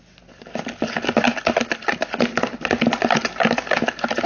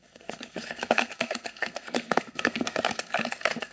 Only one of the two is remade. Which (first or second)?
second